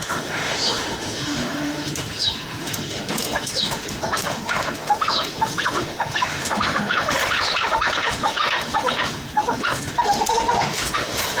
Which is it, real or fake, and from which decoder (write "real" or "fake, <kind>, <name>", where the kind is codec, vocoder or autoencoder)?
fake, autoencoder, DAC-VAE